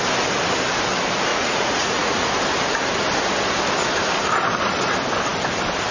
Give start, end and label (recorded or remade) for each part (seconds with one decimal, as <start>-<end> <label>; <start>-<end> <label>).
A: 0.0-1.3 recorded; 1.3-2.3 remade; 2.3-5.9 recorded